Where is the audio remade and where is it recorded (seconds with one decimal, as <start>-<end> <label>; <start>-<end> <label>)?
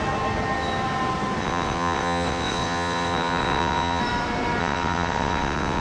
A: 0.0-1.4 recorded; 1.4-4.0 remade; 4.0-4.6 recorded; 4.6-5.8 remade